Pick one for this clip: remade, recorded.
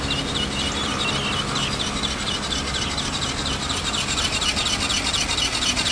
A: recorded